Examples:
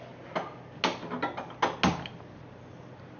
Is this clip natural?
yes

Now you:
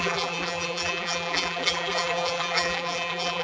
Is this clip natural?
no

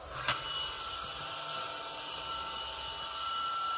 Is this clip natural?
yes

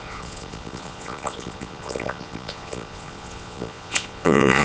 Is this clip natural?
no